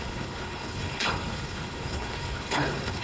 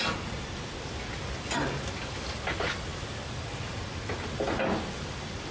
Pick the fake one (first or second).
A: first